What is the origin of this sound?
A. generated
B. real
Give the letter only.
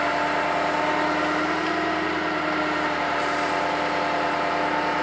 B